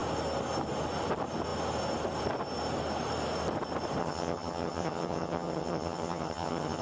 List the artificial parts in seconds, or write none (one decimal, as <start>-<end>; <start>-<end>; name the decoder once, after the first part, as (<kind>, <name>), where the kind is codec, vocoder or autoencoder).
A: 4.0-6.8 (vocoder, HiFi-GAN)